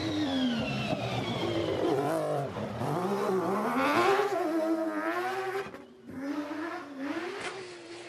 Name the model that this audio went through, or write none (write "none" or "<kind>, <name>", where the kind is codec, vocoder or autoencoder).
vocoder, BigVGAN v2